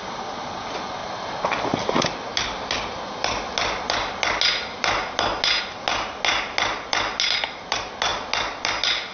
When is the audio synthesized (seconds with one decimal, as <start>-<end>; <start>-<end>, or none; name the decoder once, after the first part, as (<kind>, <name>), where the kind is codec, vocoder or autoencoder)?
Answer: none